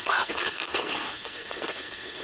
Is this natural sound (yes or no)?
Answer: no